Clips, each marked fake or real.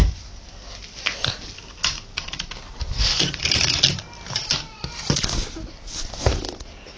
real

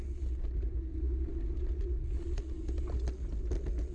real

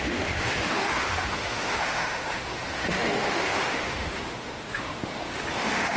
fake